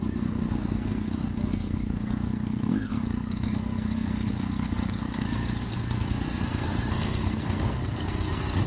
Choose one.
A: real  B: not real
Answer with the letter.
B